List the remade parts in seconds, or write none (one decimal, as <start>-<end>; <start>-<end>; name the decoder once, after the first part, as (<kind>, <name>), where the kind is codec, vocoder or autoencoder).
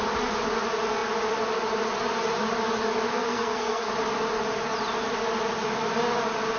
3.1-3.9 (codec, SNAC)